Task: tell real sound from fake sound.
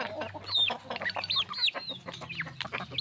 real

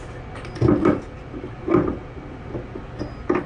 real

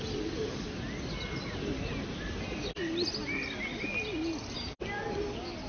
real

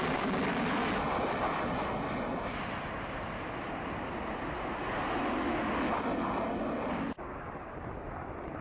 real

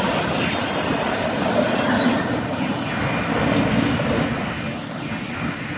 real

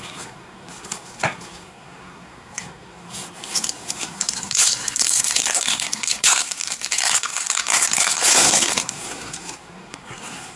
fake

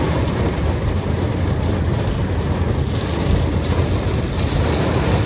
real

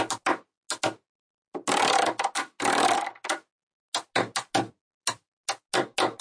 real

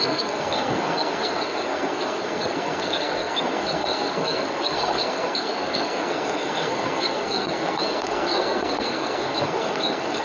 fake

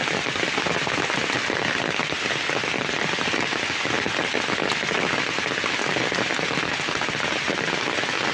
real